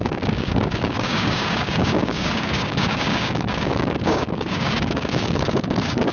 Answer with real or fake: fake